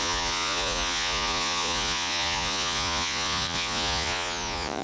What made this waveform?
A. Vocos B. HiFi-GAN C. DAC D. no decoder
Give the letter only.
A